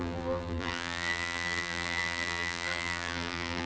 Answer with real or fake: fake